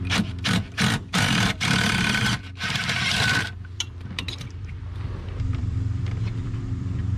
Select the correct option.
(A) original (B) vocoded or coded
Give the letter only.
B